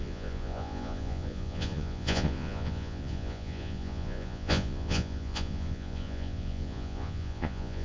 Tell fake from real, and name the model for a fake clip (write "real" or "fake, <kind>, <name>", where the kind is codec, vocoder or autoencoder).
fake, vocoder, Vocos